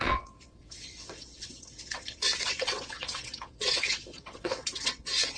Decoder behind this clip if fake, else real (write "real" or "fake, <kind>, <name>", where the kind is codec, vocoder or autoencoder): fake, vocoder, WaveNeXt